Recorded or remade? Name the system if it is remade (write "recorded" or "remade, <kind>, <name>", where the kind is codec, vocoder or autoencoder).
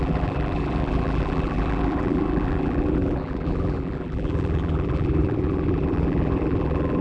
remade, vocoder, BigVGAN v2